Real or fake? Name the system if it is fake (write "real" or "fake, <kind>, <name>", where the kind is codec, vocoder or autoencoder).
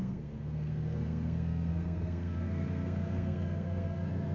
fake, codec, SNAC